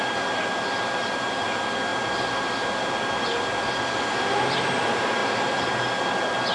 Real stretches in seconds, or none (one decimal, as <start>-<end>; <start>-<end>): 0.0-6.5